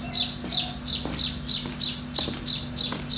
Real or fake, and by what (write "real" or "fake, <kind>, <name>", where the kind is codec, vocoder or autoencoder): real